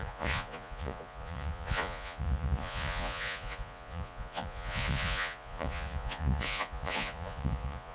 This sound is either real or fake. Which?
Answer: fake